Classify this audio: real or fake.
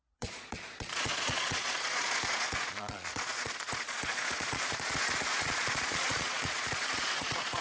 fake